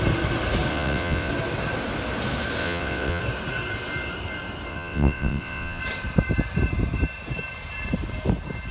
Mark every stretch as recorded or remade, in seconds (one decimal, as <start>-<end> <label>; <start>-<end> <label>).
0.0-0.7 recorded; 0.7-1.3 remade; 1.3-2.6 recorded; 2.6-3.2 remade; 3.2-4.7 recorded; 4.7-5.8 remade; 5.8-8.7 recorded